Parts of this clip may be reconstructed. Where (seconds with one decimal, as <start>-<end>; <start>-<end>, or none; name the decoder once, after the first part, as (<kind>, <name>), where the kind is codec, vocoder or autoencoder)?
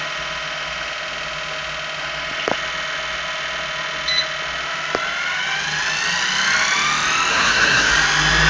7.3-7.9 (codec, SNAC)